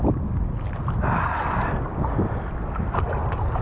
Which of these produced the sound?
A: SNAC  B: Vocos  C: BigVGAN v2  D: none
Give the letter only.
D